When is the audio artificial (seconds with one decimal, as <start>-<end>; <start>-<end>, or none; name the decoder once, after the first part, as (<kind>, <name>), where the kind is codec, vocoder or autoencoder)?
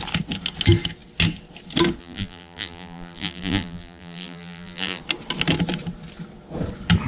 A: 2.0-5.0 (vocoder, BigVGAN v2)